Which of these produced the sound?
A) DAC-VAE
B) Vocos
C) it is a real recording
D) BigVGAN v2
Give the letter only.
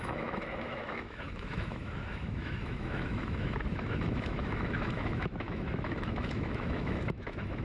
A